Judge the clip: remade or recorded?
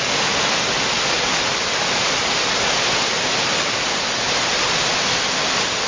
recorded